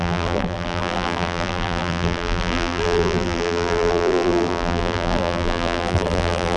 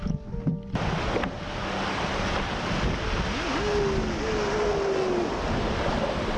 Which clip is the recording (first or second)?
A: second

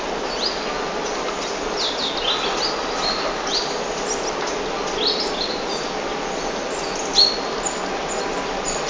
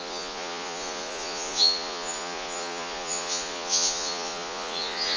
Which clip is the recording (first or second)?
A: first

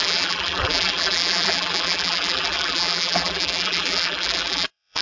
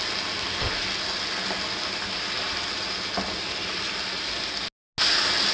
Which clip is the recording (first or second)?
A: second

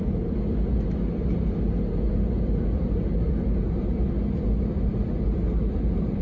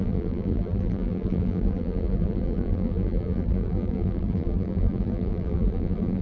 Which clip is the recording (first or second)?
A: first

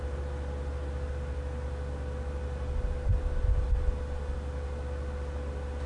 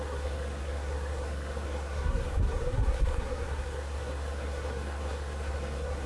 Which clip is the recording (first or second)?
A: first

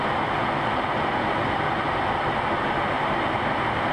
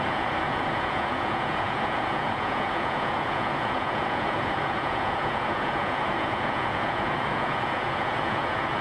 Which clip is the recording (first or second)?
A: first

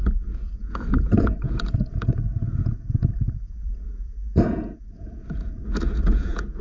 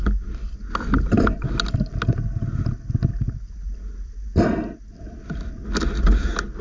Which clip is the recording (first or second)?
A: second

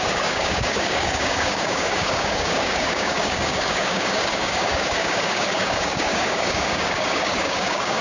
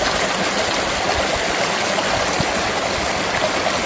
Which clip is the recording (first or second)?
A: second